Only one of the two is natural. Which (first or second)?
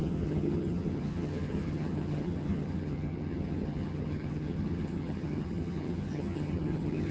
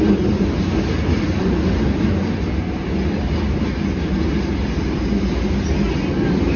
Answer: second